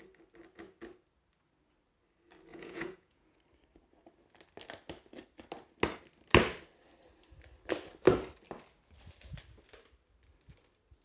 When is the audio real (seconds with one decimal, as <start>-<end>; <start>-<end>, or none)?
0.0-2.5; 3.4-11.0

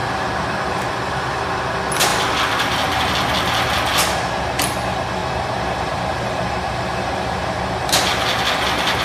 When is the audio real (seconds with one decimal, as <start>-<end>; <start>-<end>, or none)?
1.6-2.1; 3.0-5.2; 6.0-9.0

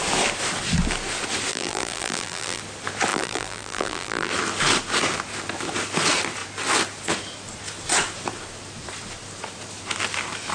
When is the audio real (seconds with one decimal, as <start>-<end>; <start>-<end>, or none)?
0.0-1.5; 2.6-3.1; 4.3-10.5

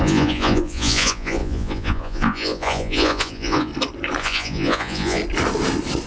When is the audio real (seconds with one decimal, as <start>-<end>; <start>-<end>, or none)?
3.7-4.2; 5.2-6.1